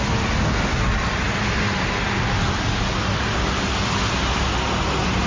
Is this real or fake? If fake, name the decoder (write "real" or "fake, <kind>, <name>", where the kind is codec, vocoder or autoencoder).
real